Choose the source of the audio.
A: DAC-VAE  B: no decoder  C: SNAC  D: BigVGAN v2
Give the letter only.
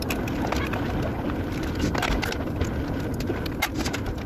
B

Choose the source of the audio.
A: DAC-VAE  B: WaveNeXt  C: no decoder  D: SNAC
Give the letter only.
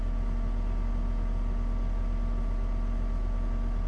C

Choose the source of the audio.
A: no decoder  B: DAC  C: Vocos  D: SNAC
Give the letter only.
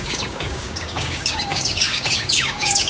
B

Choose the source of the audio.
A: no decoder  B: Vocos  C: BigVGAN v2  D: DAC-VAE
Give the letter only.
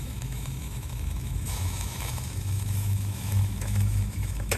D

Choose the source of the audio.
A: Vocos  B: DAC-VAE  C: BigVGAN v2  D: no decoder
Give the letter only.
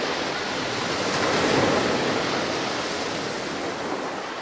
D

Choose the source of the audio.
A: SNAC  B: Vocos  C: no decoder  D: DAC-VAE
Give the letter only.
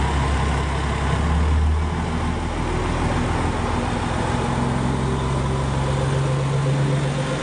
C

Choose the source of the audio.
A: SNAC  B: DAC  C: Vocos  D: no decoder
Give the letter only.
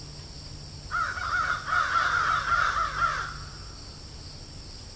D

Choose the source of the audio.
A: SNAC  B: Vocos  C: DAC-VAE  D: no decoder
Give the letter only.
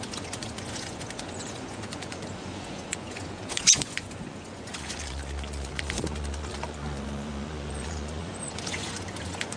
B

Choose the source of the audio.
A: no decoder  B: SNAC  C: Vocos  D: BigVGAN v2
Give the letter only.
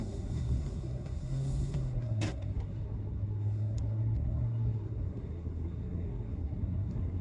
B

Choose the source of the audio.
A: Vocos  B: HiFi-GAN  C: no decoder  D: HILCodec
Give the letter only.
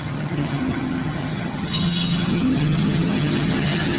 B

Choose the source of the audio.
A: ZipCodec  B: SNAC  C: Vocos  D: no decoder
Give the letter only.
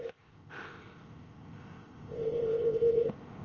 A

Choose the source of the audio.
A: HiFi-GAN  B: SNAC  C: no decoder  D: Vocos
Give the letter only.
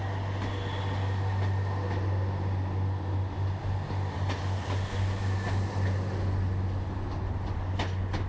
C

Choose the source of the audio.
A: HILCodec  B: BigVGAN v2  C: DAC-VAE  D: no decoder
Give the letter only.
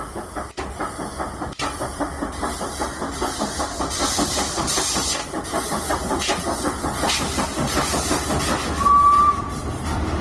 D